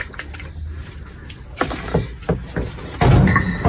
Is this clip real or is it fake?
real